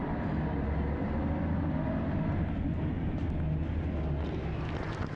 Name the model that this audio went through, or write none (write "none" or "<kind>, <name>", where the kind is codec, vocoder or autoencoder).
none